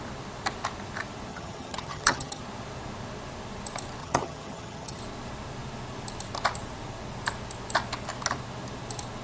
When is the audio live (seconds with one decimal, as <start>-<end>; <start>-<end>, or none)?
0.0-1.3; 2.4-4.0; 5.0-9.2